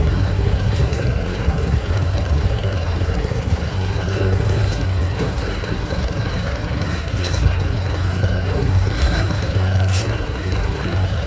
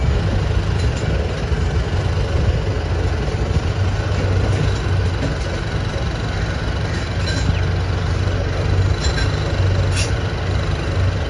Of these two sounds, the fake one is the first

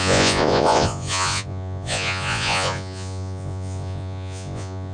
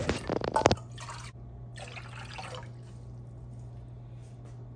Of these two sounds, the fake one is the first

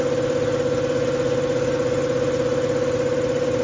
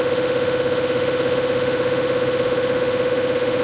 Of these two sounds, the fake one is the second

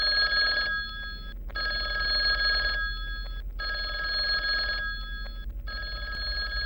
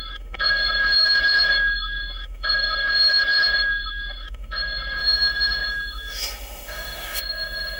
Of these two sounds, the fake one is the second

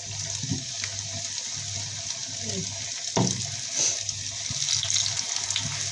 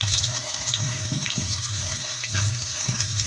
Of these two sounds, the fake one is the second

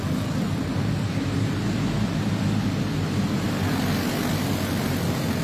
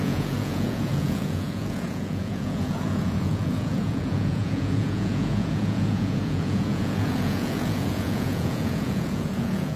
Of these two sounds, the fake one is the second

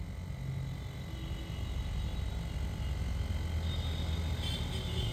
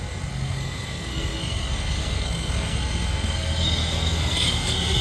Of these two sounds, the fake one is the second